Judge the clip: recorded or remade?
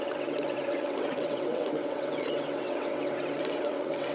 remade